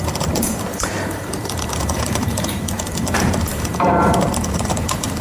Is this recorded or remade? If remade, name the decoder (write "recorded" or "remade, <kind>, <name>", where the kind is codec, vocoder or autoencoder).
remade, vocoder, BigVGAN v2